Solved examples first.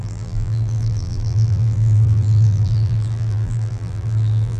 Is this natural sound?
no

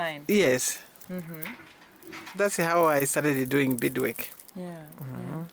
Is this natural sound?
yes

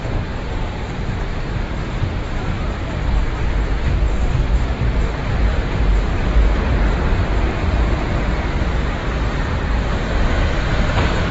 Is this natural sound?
no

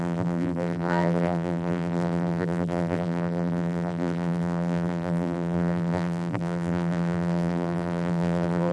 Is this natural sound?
no